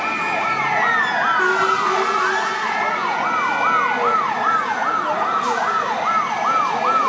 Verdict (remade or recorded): recorded